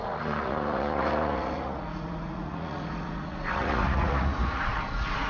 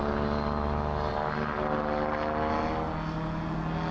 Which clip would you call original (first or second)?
second